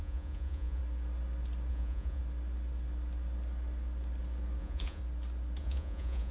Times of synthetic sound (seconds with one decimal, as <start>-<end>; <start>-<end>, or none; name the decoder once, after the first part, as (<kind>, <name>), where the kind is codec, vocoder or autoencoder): 0.0-0.8 (vocoder, Vocos); 1.7-2.2; 4.6-5.0; 5.6-6.3